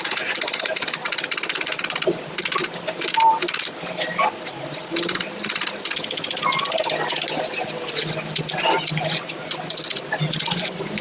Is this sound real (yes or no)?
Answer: yes